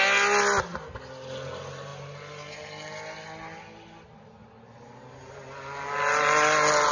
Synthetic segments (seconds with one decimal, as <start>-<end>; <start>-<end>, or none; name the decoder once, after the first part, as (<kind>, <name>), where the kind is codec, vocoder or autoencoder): none